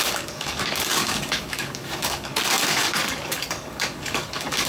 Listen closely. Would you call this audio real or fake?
fake